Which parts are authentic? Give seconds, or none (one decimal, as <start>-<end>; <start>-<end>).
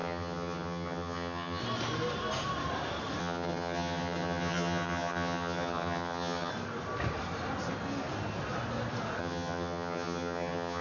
1.6-3.2; 6.5-9.2